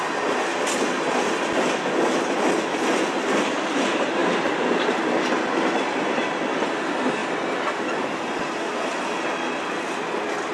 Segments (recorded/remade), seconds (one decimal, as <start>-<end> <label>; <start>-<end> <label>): 0.0-10.5 recorded